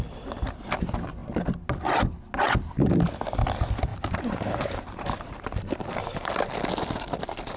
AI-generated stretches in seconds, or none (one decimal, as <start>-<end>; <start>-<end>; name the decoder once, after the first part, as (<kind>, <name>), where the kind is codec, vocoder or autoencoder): 3.9-6.3 (vocoder, BigVGAN v2)